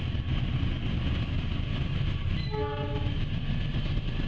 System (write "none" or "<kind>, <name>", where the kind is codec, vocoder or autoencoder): none